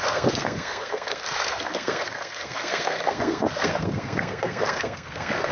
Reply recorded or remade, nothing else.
remade